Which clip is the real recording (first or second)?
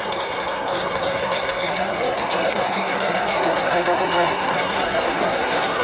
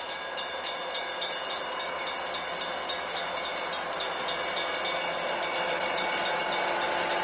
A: second